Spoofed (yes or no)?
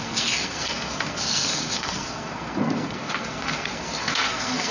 yes